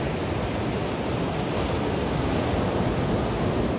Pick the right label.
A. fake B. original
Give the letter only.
B